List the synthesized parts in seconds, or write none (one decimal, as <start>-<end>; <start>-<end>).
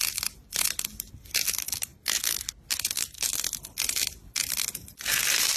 none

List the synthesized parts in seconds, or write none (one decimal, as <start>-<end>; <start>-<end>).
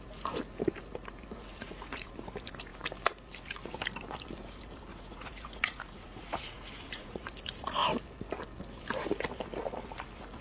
1.5-2.1; 4.9-7.3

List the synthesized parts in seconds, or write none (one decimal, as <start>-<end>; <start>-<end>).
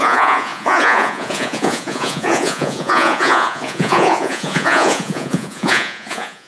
0.0-6.5